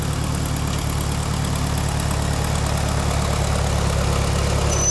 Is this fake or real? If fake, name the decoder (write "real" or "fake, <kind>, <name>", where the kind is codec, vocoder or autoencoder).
real